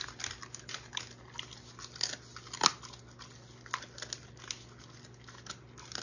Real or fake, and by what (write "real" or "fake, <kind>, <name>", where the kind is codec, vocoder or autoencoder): real